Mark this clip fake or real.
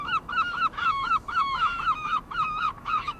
fake